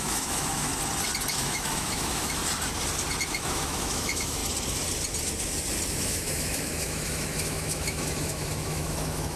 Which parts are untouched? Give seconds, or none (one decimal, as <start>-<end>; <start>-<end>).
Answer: 0.7-1.3; 2.4-3.3; 4.4-5.9